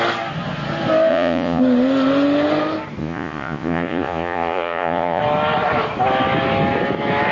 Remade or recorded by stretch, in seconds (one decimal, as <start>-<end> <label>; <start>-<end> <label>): 0.0-1.1 recorded; 1.1-1.6 remade; 1.6-3.0 recorded; 3.0-5.2 remade; 5.2-7.3 recorded